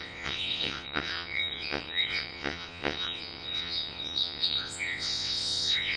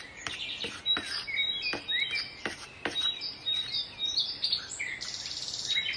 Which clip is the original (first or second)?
second